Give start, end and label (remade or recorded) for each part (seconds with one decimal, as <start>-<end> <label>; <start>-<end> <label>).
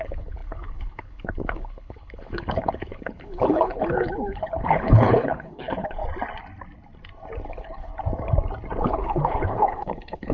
0.0-6.0 remade; 6.0-7.5 recorded; 7.5-7.9 remade; 7.9-8.8 recorded; 8.8-10.3 remade